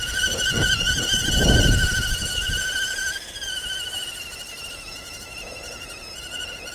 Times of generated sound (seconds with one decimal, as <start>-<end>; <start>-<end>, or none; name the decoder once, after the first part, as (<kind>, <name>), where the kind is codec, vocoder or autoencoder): 0.0-3.0 (vocoder, Vocos); 4.7-6.7